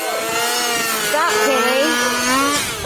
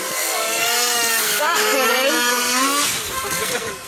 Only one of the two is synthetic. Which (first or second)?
second